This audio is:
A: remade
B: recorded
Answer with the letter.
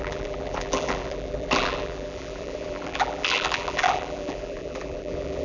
A